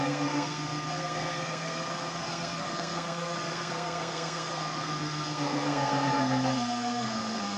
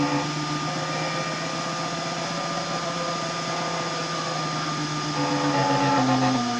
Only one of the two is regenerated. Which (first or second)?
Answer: first